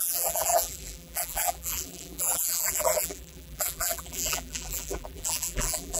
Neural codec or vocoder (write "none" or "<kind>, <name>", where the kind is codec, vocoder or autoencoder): vocoder, BigVGAN v2